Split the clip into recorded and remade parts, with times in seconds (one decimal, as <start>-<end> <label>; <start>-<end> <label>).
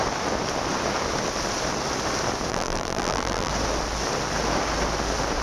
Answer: 0.0-2.5 recorded; 2.5-3.5 remade; 3.5-5.4 recorded